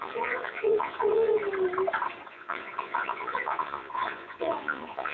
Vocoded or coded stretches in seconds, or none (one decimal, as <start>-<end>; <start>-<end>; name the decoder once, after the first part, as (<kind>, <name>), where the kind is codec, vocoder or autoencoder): 0.0-1.4 (vocoder, Vocos); 2.3-5.1